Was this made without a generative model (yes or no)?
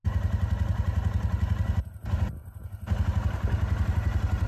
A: yes